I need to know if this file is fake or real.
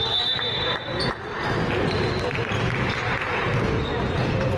real